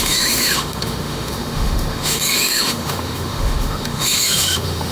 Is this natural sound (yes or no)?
no